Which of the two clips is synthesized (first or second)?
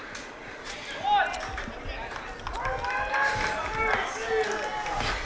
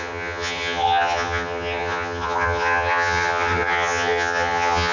second